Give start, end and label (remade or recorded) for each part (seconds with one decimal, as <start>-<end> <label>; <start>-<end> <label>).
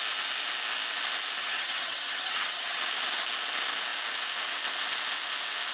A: 0.0-1.4 recorded; 1.4-2.8 remade; 2.8-5.7 recorded